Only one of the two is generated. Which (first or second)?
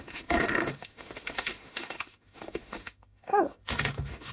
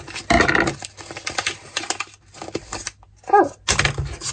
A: first